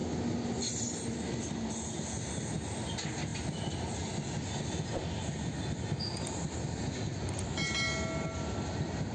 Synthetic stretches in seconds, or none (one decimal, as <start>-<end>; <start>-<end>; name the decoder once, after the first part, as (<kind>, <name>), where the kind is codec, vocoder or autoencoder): none